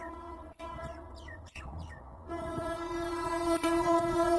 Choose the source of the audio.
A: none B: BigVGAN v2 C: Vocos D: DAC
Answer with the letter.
C